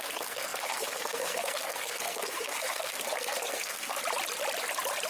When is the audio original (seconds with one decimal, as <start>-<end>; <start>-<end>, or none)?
4.0-5.1